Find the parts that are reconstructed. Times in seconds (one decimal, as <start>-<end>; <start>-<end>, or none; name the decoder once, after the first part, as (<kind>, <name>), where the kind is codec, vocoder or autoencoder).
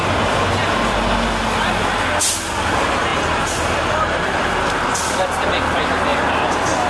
0.0-0.6 (vocoder, BigVGAN v2); 2.5-6.9